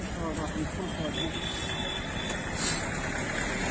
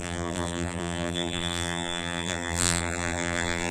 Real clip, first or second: first